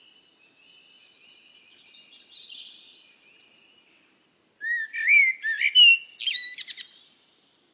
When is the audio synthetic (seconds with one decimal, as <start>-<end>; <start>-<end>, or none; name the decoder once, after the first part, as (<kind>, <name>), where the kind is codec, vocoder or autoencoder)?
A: none